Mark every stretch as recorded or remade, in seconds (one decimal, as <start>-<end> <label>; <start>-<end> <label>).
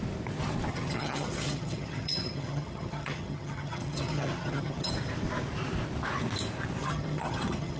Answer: 0.0-0.7 recorded; 0.7-4.9 remade; 4.9-6.8 recorded; 6.8-7.8 remade